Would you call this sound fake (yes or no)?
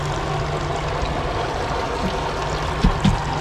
no